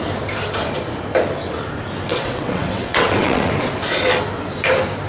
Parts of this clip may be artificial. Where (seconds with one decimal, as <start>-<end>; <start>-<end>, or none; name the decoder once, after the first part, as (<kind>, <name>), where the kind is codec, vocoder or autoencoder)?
2.1-3.5 (vocoder, WaveNeXt)